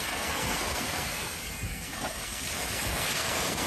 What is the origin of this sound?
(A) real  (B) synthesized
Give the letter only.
B